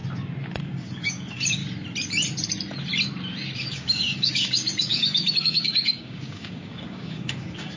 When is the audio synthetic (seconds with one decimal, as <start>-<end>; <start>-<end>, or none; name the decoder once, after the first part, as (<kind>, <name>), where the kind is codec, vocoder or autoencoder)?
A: 0.6-1.6 (codec, DAC); 3.7-7.8